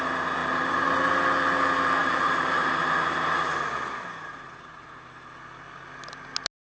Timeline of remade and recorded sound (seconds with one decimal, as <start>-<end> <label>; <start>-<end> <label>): 0.0-0.4 recorded; 0.4-1.1 remade; 1.1-2.0 recorded; 2.0-2.7 remade; 2.7-6.8 recorded